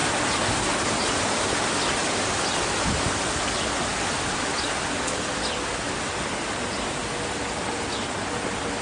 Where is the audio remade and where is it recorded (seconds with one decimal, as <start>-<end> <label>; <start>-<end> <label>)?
0.0-8.8 recorded